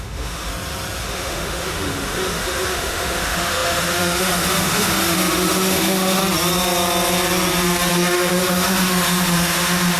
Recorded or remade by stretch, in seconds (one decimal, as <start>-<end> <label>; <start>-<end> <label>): 0.0-0.5 remade; 0.5-1.0 recorded; 1.0-6.2 remade; 6.2-7.9 recorded; 7.9-10.0 remade